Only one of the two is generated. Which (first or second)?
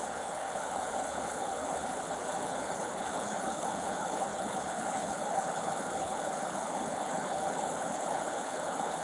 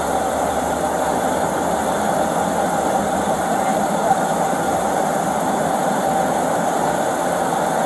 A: first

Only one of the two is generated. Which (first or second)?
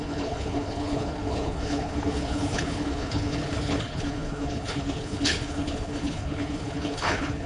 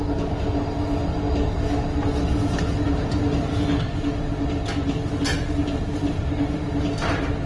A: first